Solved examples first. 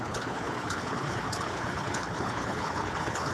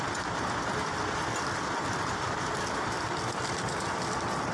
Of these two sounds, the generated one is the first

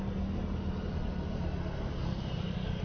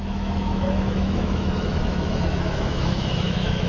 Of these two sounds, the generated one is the second